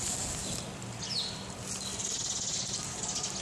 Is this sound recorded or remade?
recorded